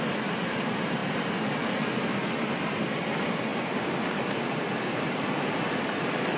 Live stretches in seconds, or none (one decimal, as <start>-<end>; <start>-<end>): 0.0-6.4

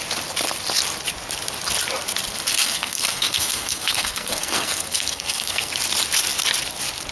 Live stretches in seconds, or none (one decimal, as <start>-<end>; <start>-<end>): 0.0-2.5; 5.7-7.1